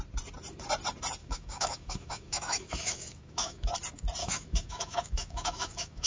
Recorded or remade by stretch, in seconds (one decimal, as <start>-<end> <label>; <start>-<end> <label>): 0.0-1.2 recorded; 1.2-3.7 remade; 3.7-4.2 recorded; 4.2-6.1 remade